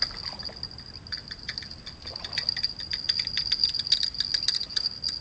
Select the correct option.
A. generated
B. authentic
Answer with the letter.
B